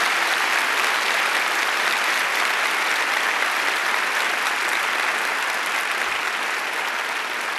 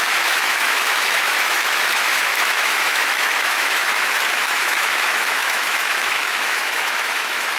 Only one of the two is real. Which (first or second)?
first